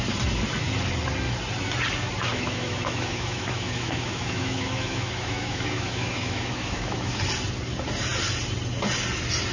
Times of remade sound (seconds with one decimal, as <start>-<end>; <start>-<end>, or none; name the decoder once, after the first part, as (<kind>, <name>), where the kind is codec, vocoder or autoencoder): 2.3-7.2 (autoencoder, DAC-VAE)